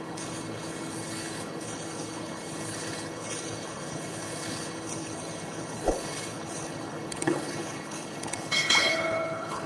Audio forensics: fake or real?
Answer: fake